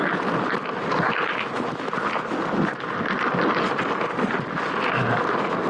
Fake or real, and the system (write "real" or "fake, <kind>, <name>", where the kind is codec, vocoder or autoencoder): real